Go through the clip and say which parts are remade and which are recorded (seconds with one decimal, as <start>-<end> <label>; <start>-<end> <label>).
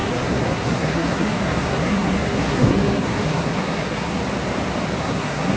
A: 0.0-4.2 remade; 4.2-5.0 recorded; 5.0-5.6 remade